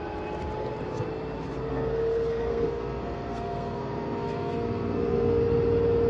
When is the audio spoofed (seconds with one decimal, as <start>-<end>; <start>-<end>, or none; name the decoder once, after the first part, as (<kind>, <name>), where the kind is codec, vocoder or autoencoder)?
1.7-5.4 (codec, SNAC)